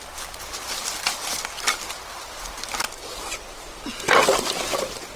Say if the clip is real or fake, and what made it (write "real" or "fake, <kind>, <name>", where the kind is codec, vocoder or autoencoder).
real